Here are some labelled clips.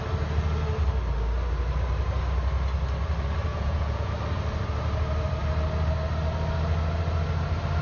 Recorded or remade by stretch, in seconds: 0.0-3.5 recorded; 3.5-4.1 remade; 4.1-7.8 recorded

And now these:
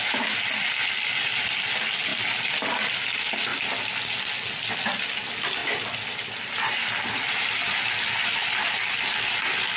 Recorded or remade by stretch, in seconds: 0.0-9.8 recorded